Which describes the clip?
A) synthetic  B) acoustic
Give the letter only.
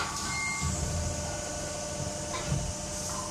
B